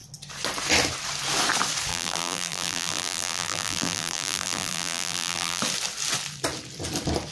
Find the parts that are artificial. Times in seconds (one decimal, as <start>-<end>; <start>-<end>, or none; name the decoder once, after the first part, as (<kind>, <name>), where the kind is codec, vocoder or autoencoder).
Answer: 1.9-5.6 (vocoder, BigVGAN v2)